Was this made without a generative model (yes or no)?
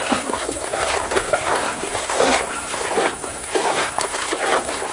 no